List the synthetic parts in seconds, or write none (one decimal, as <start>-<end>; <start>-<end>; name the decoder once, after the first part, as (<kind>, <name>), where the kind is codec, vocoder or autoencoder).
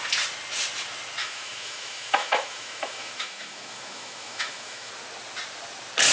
1.2-4.9 (autoencoder, DAC-VAE)